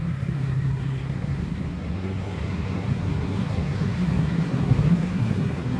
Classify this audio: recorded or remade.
remade